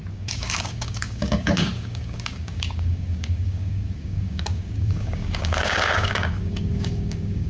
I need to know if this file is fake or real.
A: fake